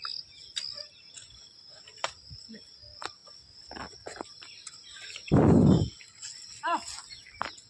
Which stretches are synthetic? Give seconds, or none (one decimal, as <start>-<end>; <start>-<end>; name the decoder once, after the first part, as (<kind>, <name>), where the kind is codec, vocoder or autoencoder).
1.7-2.2 (vocoder, BigVGAN v2)